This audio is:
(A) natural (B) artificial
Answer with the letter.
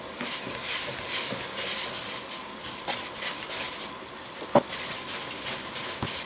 A